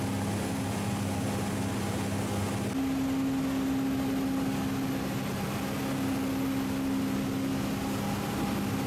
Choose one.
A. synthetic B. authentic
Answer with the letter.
B